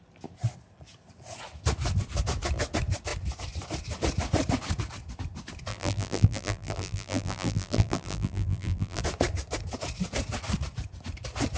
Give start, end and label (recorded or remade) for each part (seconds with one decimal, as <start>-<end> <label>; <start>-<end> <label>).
0.0-5.7 recorded; 5.7-9.0 remade; 9.0-11.6 recorded